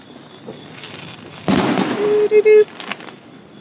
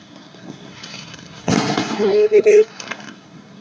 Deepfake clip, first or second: second